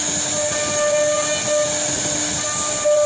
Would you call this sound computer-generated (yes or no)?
no